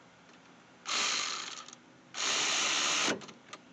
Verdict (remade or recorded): recorded